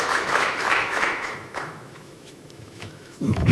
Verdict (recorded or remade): remade